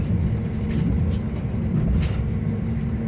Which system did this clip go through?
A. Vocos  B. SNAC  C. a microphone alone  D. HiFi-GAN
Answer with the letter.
C